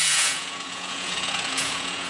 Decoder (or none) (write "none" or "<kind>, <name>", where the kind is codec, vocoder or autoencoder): vocoder, Vocos